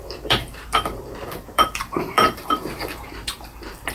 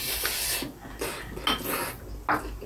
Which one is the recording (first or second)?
second